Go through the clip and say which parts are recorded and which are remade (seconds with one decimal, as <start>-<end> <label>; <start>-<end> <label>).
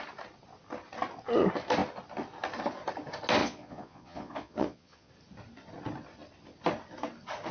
0.0-3.4 recorded; 3.4-5.1 remade; 5.1-7.5 recorded